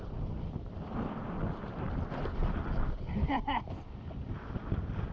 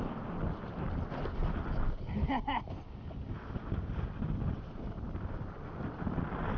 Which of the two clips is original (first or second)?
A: second